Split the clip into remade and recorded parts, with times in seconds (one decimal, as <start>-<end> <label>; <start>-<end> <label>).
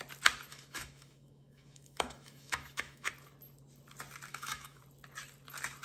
0.0-0.5 recorded; 0.5-3.1 remade; 3.1-4.3 recorded; 4.3-4.8 remade; 4.8-5.8 recorded